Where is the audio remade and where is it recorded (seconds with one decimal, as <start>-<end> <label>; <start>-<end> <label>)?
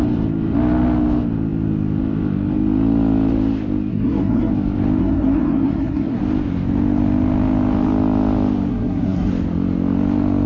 0.0-3.9 recorded; 3.9-4.5 remade; 4.5-5.0 recorded; 5.0-6.2 remade; 6.2-8.7 recorded; 8.7-9.3 remade; 9.3-10.5 recorded